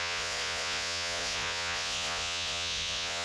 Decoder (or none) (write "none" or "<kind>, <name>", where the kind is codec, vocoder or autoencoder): vocoder, Vocos